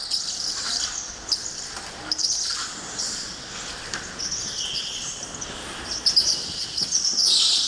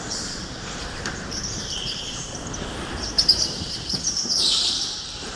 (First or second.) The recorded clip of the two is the first